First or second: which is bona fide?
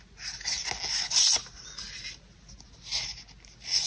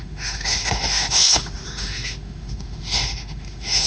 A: first